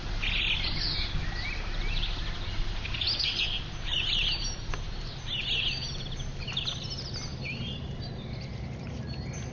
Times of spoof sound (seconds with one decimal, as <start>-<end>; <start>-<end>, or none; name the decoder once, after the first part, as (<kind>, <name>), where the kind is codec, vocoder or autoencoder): none